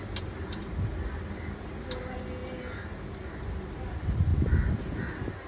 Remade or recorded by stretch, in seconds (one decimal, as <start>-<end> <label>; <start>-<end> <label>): 0.0-0.7 remade; 0.7-4.3 recorded; 4.3-4.8 remade; 4.8-5.5 recorded